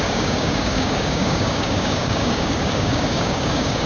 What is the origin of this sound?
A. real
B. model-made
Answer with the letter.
B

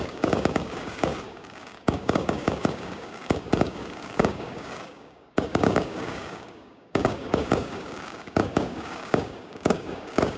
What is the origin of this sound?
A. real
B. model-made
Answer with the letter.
B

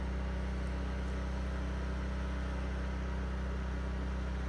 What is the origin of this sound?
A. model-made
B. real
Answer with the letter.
B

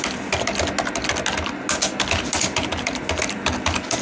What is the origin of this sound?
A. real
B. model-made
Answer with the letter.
A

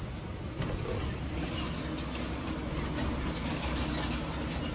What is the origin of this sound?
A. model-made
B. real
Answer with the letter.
B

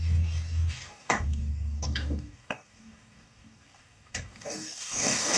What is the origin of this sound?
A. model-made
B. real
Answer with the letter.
A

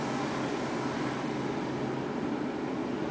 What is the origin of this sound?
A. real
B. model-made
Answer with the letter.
A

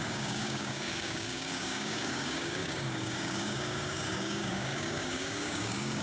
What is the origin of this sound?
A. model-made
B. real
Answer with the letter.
A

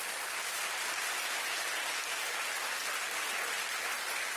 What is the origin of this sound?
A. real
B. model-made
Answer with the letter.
A